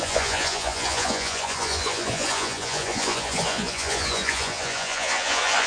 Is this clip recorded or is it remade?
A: remade